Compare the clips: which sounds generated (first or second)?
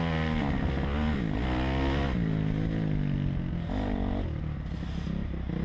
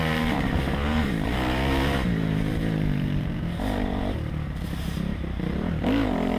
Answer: second